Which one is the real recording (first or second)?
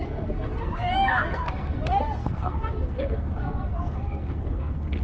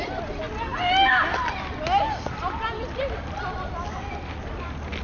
second